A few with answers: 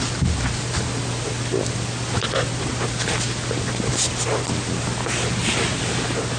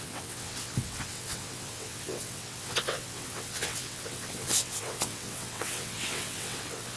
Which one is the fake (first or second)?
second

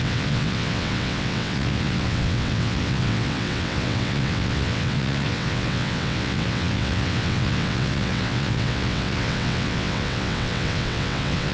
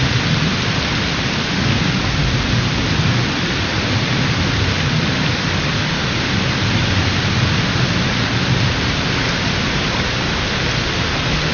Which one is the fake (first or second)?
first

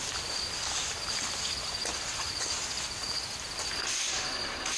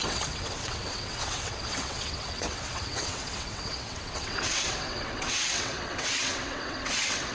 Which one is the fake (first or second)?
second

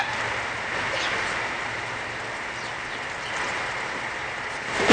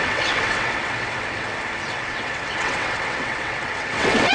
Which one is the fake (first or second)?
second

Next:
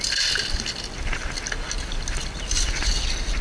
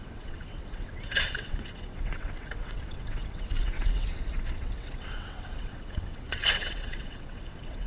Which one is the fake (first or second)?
second